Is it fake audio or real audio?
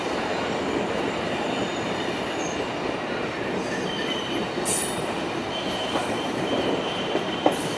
fake